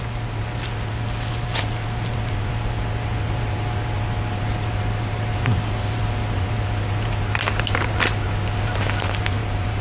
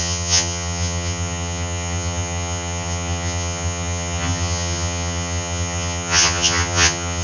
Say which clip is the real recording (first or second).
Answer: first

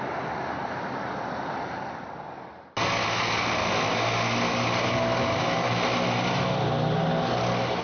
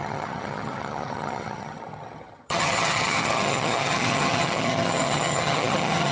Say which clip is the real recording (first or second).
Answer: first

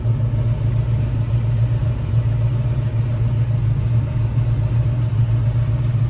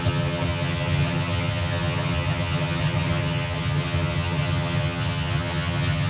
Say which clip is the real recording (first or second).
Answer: first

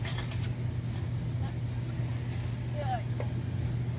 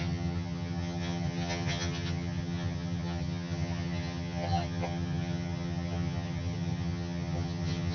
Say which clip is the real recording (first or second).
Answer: first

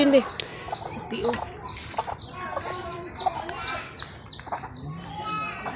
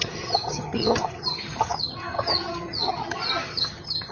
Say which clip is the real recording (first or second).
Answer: first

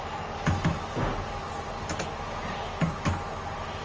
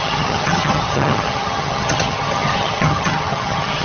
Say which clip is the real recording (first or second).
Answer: first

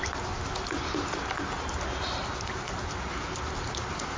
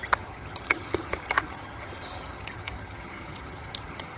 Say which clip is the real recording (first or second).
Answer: first